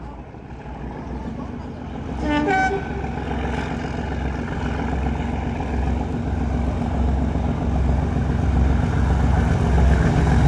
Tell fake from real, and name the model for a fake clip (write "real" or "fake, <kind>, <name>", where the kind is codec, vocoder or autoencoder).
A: real